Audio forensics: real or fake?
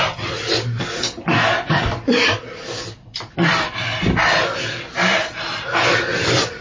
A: fake